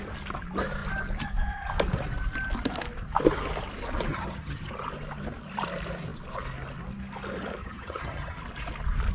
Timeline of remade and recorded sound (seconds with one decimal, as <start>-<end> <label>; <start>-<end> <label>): 0.0-4.1 recorded; 4.1-4.7 remade; 4.7-7.6 recorded; 7.6-8.4 remade; 8.4-9.1 recorded